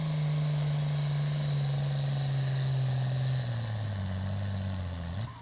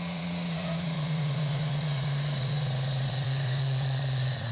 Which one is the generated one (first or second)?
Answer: second